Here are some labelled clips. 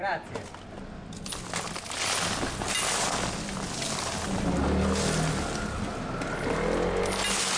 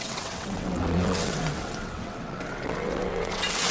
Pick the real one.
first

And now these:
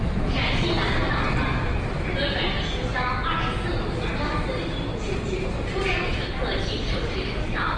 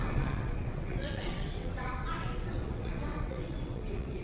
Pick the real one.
first